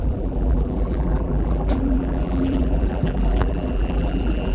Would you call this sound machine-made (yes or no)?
yes